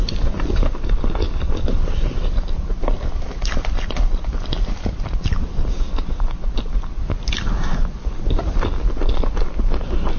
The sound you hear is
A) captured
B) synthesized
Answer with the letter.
B